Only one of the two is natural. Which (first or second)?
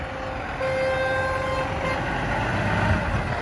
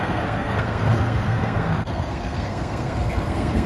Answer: first